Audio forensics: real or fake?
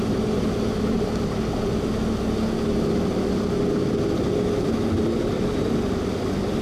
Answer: real